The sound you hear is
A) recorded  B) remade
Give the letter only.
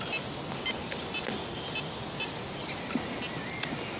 A